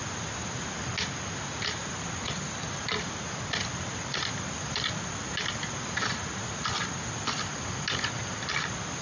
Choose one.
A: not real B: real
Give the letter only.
B